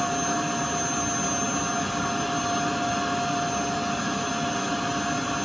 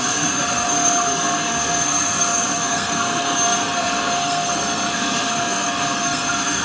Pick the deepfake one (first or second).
second